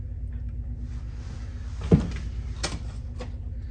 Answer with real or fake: real